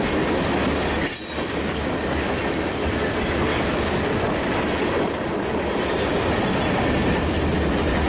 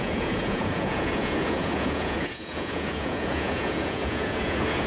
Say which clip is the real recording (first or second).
first